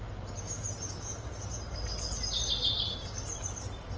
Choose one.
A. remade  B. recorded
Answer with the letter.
B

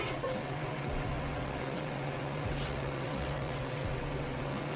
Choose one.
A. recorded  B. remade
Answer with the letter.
B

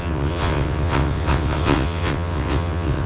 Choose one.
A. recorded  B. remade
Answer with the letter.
B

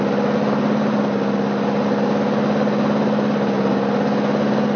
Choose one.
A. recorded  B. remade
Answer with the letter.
A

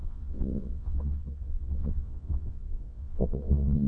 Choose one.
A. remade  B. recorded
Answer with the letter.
A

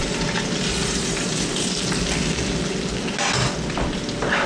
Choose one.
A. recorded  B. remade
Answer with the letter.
A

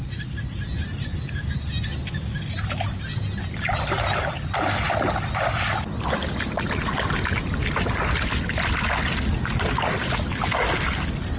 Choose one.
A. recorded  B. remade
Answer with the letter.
A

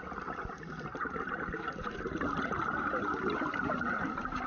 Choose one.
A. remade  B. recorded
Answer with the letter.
B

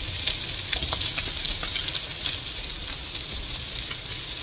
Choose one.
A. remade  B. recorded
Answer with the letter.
B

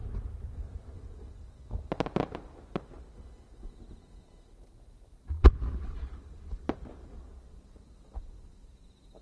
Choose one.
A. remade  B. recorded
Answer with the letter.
B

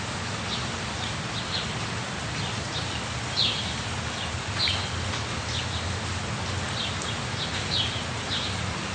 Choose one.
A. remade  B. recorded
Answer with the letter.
B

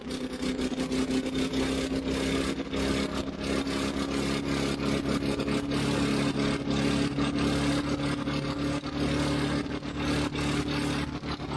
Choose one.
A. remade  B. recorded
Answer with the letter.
B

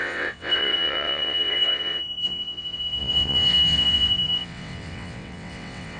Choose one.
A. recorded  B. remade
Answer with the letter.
B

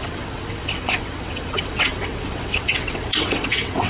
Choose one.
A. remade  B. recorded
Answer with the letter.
A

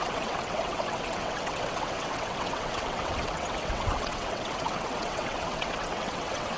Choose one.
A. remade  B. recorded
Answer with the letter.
A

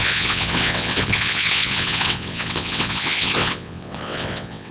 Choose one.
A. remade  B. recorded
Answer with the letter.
A